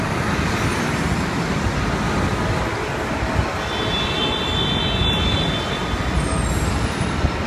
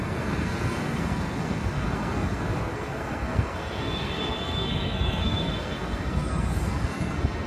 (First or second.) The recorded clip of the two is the first